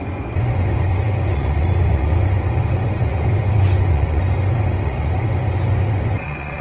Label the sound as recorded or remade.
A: remade